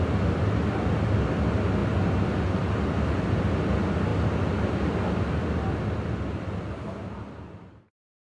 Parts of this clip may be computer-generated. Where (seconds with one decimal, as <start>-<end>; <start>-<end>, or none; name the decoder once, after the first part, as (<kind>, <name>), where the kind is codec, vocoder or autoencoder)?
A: none